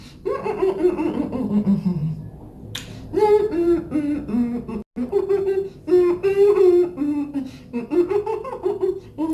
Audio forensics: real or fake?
real